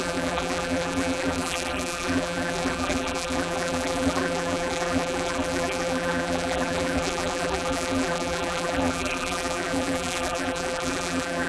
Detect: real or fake fake